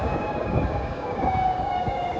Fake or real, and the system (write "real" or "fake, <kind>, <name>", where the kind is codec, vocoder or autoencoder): fake, codec, DAC